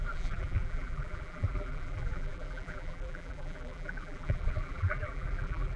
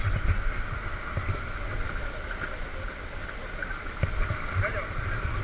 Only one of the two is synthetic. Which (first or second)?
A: first